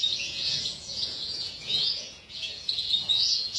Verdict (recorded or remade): remade